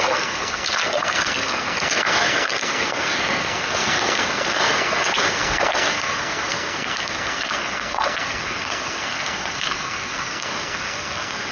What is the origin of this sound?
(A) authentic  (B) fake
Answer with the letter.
B